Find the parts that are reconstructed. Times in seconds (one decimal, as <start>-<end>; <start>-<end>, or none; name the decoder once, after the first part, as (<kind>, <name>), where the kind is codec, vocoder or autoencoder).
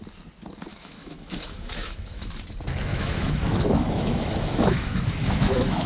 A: 0.7-2.3 (autoencoder, DAC-VAE); 2.9-5.9